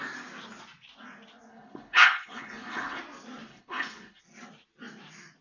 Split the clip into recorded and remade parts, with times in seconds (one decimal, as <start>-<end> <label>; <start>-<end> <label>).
0.0-1.5 recorded; 1.5-3.0 remade; 3.0-3.5 recorded; 3.5-4.2 remade; 4.2-5.4 recorded